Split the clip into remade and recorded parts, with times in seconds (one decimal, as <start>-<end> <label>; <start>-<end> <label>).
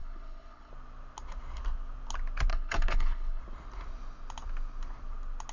0.0-0.7 remade; 0.7-2.5 recorded; 2.5-3.4 remade; 3.4-5.5 recorded